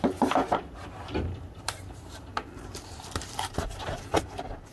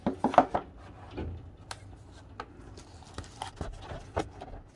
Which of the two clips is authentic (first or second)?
second